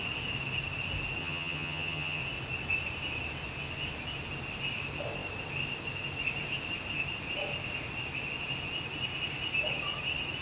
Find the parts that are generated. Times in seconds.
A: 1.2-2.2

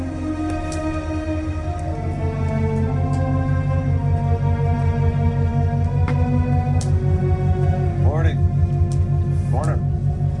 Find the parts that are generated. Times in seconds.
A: none

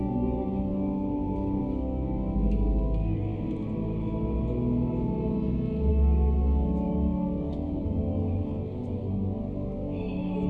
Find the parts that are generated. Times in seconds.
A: 0.0-0.7; 1.6-3.3; 5.9-10.5

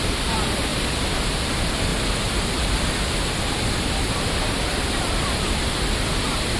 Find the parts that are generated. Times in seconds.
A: 0.0-1.9; 4.6-6.6

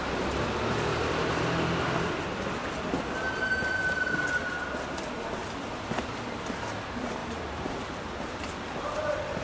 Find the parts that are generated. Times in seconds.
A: 7.2-7.8

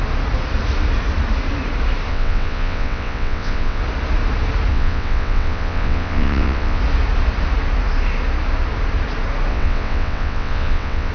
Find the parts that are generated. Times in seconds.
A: 2.1-3.8; 4.7-6.8; 9.5-11.1